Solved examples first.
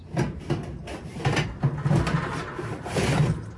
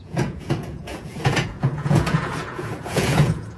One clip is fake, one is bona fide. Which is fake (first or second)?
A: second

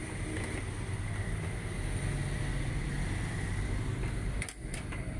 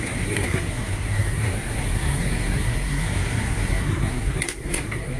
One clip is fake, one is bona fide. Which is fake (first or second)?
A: second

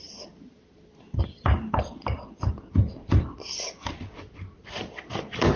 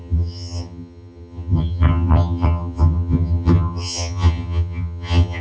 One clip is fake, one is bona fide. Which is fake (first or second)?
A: second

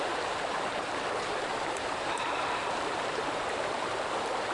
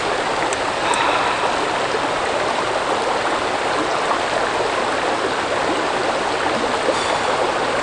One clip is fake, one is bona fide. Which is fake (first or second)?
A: first